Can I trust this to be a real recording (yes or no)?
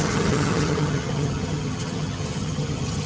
no